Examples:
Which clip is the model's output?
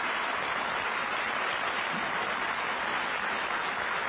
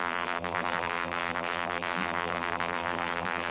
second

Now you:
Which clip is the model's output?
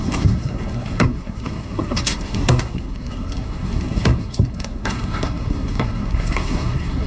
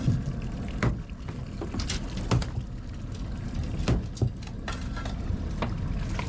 first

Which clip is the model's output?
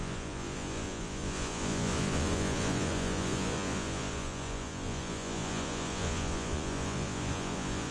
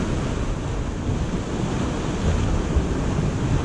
first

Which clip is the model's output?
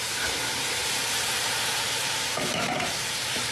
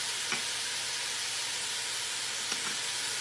first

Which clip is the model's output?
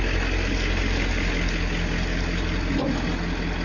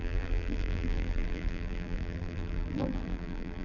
second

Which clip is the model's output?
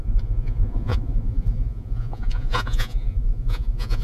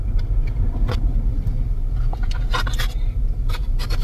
first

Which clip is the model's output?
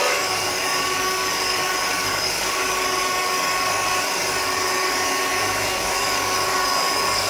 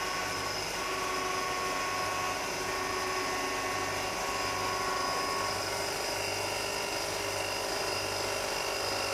first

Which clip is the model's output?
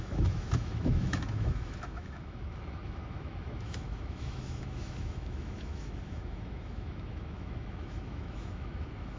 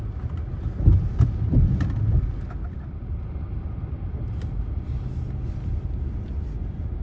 first